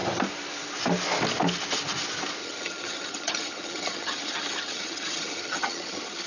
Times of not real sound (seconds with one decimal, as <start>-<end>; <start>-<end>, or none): 2.4-6.3